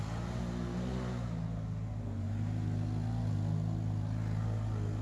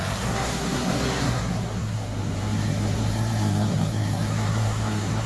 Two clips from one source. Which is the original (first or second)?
first